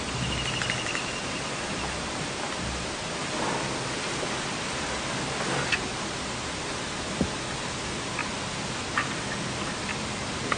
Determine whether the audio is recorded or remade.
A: recorded